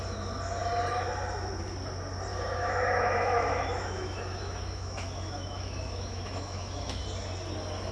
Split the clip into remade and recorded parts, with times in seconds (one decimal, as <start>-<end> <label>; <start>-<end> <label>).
0.0-2.3 recorded; 2.3-7.0 remade; 7.0-7.9 recorded